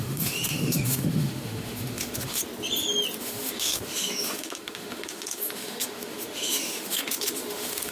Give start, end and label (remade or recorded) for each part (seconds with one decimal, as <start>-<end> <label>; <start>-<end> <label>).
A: 0.0-2.4 remade; 2.4-3.2 recorded; 3.2-7.9 remade